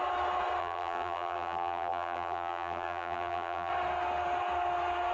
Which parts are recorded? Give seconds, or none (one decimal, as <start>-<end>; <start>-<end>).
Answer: 0.0-0.6; 3.7-5.1